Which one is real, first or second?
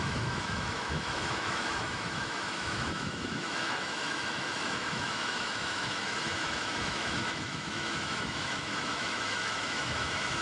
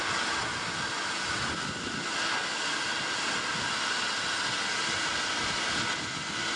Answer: second